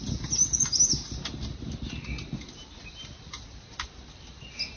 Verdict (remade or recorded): recorded